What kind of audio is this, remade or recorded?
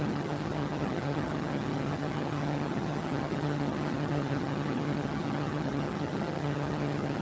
remade